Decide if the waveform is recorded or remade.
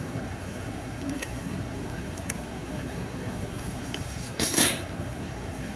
remade